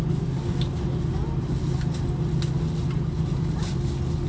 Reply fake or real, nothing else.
real